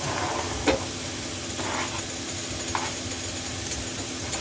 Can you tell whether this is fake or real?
real